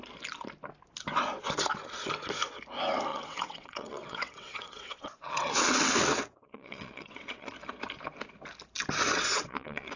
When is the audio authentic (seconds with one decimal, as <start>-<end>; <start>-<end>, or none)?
0.0-3.1; 7.5-9.1